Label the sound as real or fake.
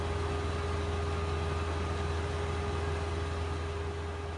real